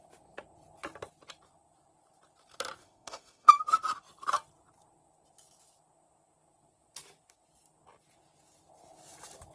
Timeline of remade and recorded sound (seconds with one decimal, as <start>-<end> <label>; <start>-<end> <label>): 0.0-2.8 recorded; 2.8-3.6 remade; 3.6-9.5 recorded